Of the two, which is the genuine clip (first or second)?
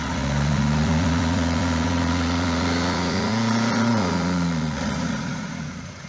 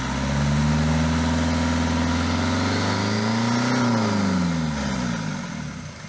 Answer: second